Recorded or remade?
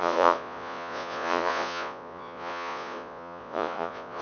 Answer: remade